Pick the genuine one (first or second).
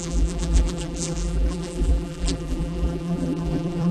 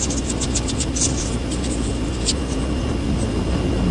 second